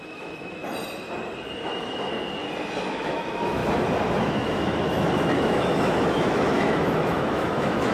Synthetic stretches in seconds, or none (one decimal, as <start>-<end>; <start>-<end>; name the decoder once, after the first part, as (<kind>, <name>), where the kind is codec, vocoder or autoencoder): 0.0-0.6 (autoencoder, DAC-VAE); 1.7-2.1; 2.9-3.6; 4.2-7.9